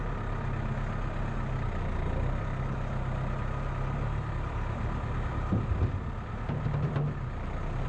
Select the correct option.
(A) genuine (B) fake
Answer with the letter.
A